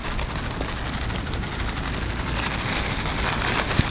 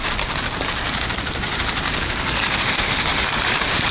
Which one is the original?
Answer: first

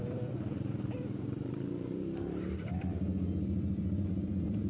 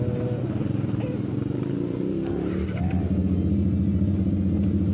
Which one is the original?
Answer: second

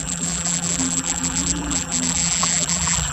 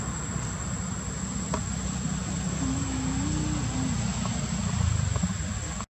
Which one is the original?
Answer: second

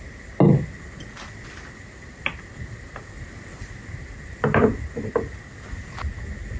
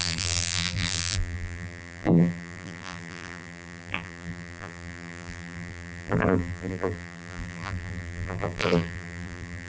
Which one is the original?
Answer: first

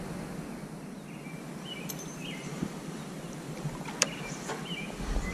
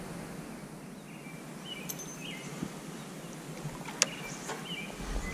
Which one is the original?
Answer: second